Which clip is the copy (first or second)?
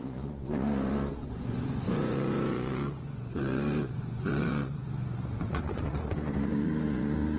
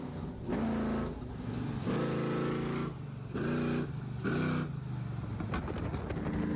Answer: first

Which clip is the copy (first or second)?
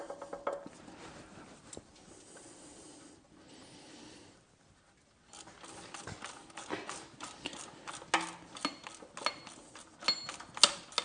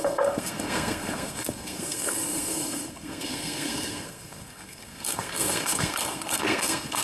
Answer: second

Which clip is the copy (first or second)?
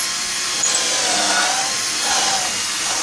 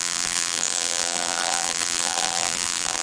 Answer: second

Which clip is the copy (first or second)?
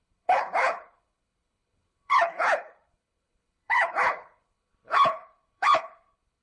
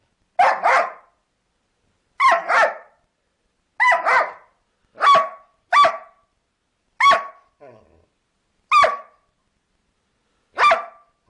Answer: first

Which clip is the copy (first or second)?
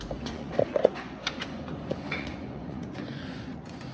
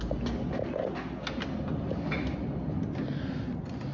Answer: first